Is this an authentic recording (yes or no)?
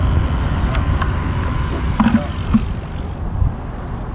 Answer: yes